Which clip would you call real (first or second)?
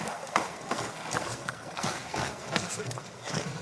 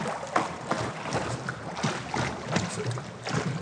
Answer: second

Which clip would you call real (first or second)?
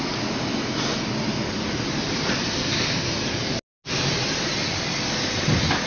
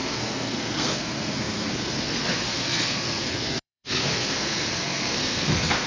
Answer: first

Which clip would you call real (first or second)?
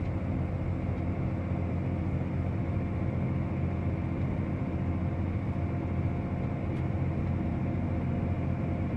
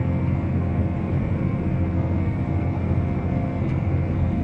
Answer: first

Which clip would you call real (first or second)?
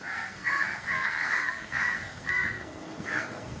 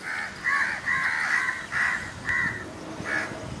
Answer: second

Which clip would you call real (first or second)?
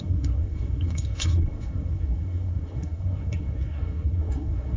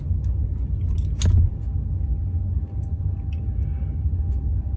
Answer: second